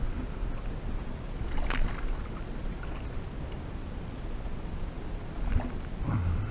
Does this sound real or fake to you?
real